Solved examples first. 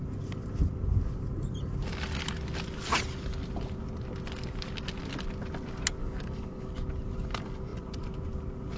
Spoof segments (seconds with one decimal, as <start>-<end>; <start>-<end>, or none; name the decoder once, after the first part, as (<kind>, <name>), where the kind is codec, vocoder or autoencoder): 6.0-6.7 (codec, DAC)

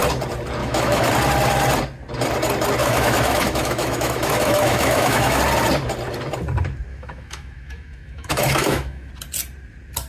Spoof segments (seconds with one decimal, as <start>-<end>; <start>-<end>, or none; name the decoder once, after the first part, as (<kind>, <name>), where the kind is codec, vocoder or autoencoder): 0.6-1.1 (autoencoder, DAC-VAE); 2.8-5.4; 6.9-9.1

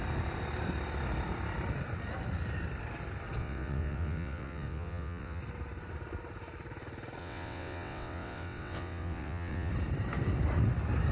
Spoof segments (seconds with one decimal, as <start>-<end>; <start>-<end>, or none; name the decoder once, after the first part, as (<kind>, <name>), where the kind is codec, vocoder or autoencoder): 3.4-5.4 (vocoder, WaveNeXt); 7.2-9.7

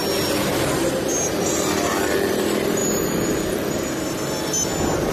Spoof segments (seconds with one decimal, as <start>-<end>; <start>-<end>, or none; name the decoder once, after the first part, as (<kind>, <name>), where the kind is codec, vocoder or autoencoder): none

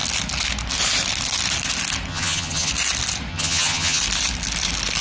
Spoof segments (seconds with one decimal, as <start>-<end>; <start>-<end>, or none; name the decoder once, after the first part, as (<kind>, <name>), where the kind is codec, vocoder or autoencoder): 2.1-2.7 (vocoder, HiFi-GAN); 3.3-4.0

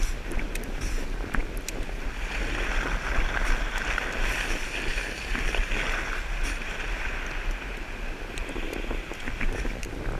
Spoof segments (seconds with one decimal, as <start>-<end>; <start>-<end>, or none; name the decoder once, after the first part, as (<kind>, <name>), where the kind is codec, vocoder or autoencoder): none

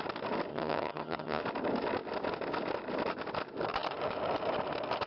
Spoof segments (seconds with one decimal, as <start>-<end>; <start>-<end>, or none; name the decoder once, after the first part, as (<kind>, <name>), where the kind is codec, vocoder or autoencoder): 0.5-1.4 (vocoder, HiFi-GAN)

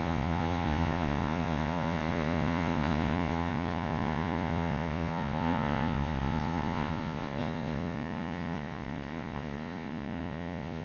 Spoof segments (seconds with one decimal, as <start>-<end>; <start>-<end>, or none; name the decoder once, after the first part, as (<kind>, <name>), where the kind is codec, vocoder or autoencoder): 0.0-10.8 (vocoder, Vocos)